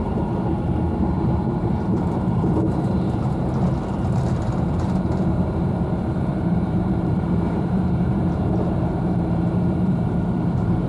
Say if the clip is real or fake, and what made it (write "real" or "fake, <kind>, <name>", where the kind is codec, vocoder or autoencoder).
fake, vocoder, BigVGAN v2